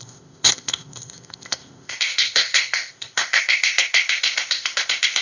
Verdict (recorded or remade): remade